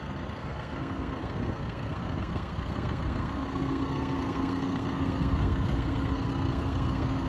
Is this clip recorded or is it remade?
remade